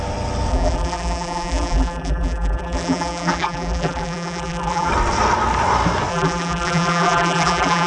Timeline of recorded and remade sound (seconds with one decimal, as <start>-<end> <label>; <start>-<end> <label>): 0.0-0.5 recorded; 0.5-4.9 remade; 4.9-6.1 recorded; 6.1-7.9 remade